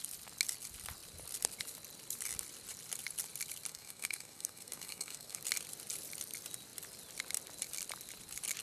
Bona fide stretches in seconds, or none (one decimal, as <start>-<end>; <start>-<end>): 0.0-3.7; 5.4-8.6